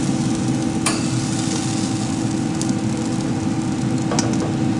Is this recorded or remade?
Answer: recorded